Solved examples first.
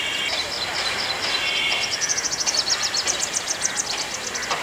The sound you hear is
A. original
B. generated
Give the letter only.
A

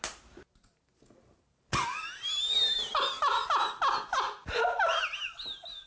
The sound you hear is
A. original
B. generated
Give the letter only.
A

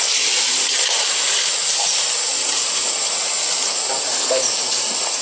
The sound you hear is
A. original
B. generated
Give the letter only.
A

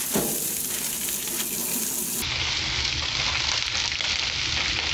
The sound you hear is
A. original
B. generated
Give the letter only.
A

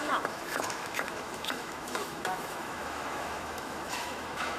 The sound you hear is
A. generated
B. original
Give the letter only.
A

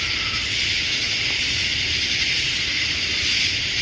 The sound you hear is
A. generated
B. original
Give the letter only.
B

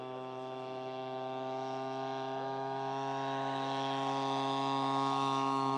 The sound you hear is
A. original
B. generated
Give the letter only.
B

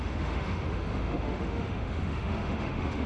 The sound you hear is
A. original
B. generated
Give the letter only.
B